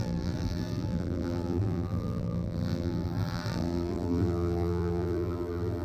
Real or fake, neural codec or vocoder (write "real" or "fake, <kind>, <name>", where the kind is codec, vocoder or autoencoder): fake, vocoder, BigVGAN v2